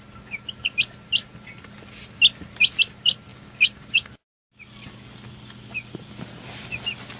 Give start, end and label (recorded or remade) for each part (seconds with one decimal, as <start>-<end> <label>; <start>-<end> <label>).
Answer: 0.0-3.3 recorded; 3.3-4.1 remade; 4.1-7.2 recorded